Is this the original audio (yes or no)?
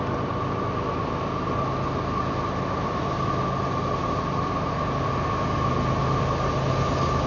yes